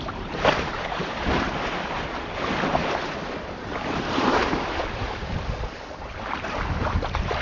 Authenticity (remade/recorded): remade